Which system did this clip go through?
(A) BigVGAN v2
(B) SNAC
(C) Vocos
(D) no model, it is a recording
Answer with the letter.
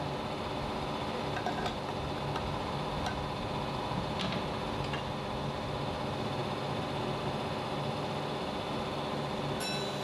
D